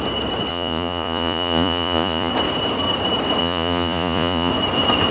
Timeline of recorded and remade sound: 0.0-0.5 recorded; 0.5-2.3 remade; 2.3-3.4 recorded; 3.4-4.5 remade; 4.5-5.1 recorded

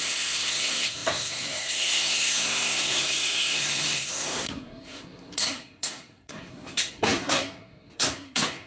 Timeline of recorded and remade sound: 0.0-8.7 remade